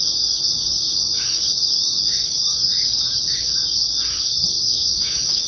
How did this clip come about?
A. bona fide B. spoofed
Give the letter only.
B